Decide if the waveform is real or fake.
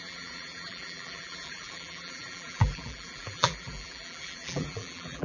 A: fake